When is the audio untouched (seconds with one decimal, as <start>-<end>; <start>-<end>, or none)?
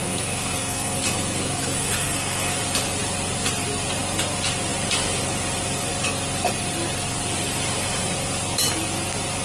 2.6-9.4